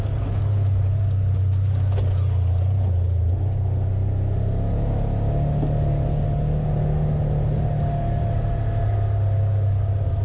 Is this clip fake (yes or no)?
no